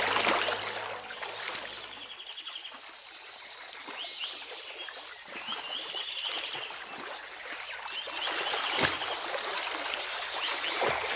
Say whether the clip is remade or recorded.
recorded